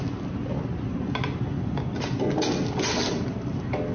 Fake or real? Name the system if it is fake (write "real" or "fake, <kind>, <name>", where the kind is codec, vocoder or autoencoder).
real